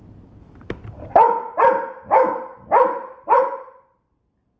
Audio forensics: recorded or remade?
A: recorded